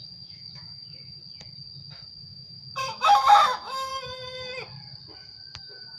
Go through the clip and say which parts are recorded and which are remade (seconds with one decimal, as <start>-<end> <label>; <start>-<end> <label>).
0.0-1.2 remade; 1.2-2.2 recorded; 2.2-3.9 remade; 3.9-5.6 recorded; 5.6-6.0 remade